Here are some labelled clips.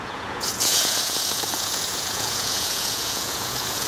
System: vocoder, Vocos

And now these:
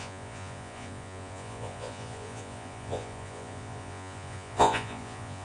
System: vocoder, Vocos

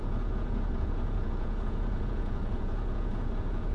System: vocoder, Vocos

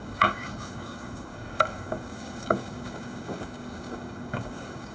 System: codec, DAC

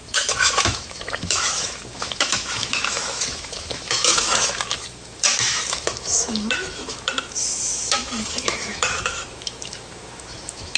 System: autoencoder, DAC-VAE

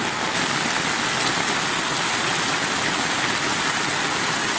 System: none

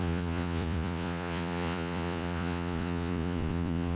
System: vocoder, Vocos